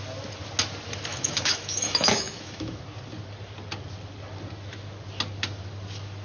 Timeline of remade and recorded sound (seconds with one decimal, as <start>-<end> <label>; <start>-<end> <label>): 0.0-1.1 recorded; 1.1-2.8 remade; 2.8-6.2 recorded